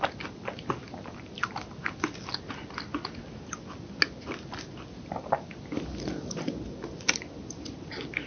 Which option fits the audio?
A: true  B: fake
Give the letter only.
A